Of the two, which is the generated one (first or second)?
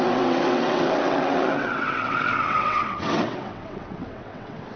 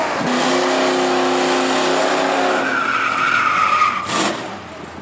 first